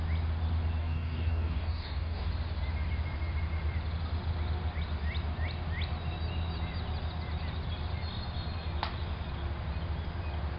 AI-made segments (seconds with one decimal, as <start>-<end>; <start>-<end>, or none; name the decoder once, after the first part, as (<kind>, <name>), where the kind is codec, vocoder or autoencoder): 0.8-2.3 (codec, DAC)